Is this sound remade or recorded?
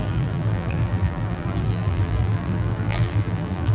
remade